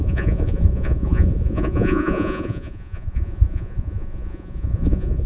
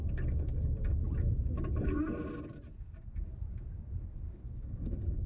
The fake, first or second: first